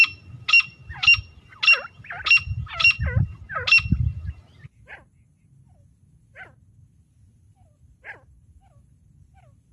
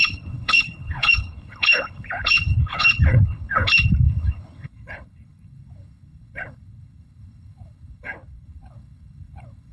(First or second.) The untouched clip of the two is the first